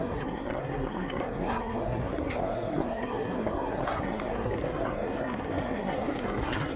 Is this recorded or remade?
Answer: remade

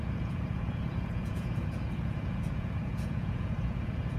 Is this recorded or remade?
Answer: remade